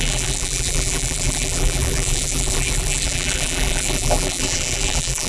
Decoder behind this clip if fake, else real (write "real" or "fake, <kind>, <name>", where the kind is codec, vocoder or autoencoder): fake, vocoder, BigVGAN v2